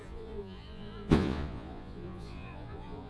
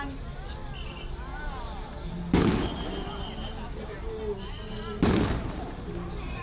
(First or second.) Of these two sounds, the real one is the second